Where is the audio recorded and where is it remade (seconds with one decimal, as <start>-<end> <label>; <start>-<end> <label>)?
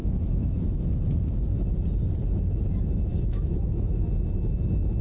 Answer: 0.0-0.7 remade; 0.7-3.1 recorded; 3.1-4.1 remade; 4.1-5.0 recorded